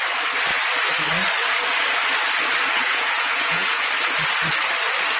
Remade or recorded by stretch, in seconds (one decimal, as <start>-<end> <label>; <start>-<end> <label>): 0.0-2.8 recorded; 2.8-3.9 remade; 3.9-5.2 recorded